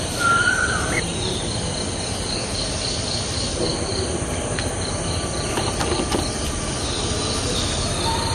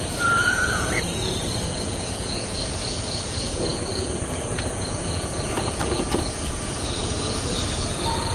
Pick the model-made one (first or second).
second